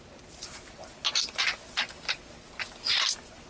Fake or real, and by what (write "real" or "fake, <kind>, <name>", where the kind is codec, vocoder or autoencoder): real